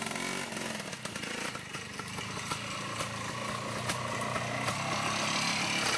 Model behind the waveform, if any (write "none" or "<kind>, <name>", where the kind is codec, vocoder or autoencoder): none